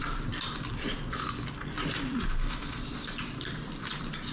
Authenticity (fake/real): real